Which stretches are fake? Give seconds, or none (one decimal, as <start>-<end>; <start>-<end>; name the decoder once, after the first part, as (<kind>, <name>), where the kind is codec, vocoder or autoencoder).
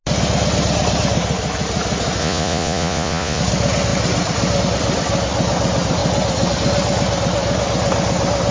2.2-3.4 (vocoder, Vocos)